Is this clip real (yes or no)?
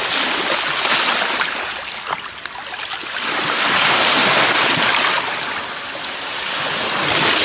yes